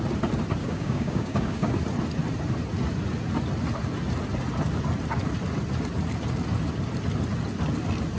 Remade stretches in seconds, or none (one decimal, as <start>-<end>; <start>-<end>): 0.6-1.7